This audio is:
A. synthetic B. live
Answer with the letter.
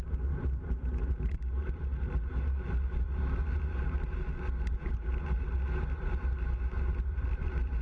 A